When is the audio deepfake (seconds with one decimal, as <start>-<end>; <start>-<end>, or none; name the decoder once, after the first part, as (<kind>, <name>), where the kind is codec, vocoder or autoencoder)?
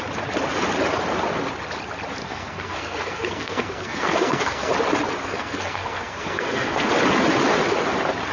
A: 2.2-4.7 (codec, SNAC); 5.2-6.9